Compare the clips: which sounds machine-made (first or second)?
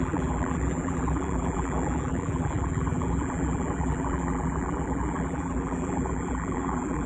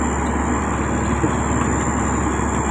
first